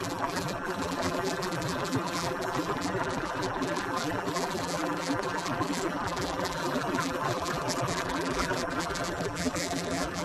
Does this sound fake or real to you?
fake